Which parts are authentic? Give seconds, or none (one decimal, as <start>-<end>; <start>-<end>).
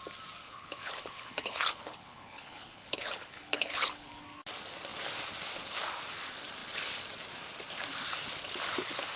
0.0-0.4; 4.1-9.2